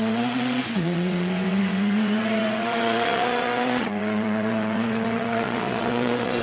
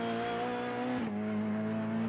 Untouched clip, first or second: second